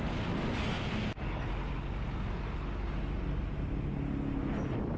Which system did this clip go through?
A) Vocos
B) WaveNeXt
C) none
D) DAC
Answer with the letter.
C